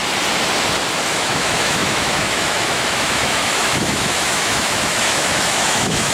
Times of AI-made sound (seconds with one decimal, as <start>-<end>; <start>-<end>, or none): 1.1-6.1